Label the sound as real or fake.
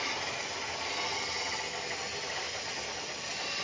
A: real